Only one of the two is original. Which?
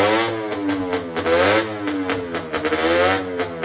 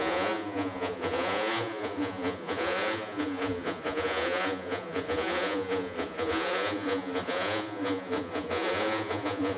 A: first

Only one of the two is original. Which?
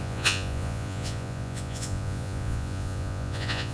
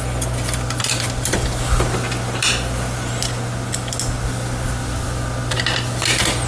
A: second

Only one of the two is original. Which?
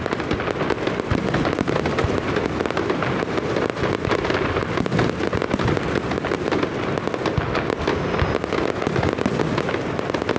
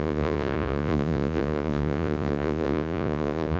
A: first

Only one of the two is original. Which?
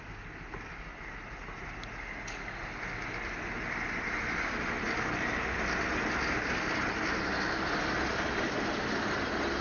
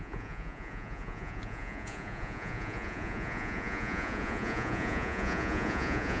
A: first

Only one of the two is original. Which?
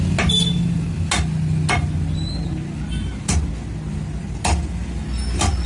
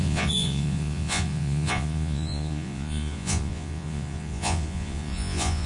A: first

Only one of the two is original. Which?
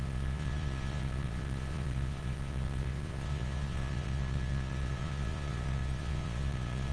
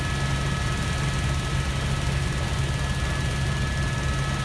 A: second